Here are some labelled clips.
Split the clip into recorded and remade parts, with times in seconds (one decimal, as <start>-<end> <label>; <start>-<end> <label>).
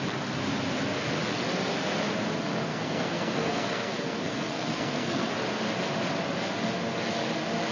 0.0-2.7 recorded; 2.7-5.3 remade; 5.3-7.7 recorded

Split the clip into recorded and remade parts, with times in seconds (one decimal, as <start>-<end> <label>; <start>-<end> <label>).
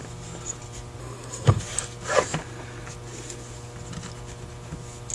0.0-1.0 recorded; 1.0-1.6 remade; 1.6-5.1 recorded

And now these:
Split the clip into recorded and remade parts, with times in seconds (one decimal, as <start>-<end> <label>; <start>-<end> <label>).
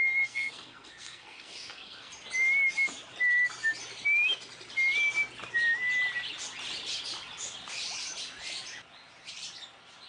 0.0-2.1 remade; 2.1-10.1 recorded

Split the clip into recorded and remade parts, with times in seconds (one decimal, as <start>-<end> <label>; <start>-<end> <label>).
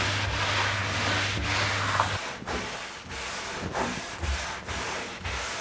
0.0-5.6 recorded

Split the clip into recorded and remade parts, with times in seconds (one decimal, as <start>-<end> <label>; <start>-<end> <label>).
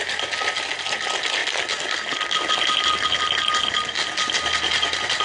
0.0-5.2 recorded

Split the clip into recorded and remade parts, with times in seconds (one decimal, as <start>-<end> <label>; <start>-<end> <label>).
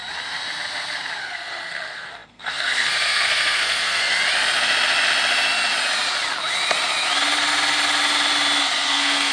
0.0-1.2 recorded; 1.2-4.1 remade; 4.1-8.6 recorded; 8.6-9.3 remade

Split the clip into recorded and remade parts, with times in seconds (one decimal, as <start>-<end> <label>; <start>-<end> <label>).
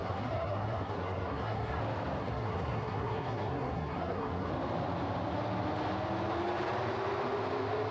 0.0-1.8 remade; 1.8-2.2 recorded; 2.2-4.5 remade; 4.5-7.9 recorded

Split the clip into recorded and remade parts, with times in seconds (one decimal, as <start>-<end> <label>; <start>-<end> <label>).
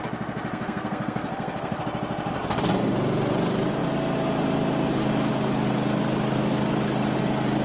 0.0-0.5 recorded; 0.5-1.8 remade; 1.8-7.6 recorded